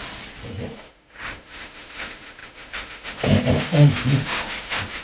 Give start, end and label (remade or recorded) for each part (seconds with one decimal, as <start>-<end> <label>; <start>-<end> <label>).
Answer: 0.0-0.7 recorded; 0.7-5.0 remade